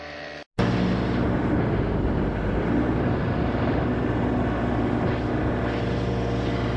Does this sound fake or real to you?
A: real